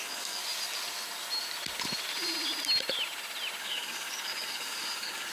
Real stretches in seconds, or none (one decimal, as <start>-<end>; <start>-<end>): 0.4-3.6